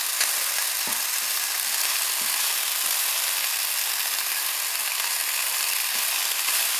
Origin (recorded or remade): recorded